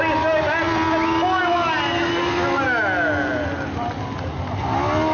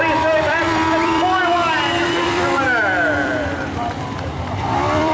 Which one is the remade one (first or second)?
second